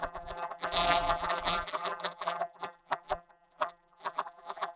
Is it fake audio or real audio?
fake